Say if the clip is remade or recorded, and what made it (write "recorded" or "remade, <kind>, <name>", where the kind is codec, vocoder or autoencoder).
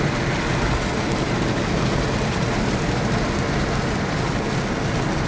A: recorded